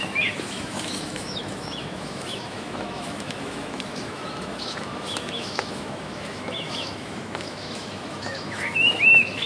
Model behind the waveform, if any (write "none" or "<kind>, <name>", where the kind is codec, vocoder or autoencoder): autoencoder, DAC-VAE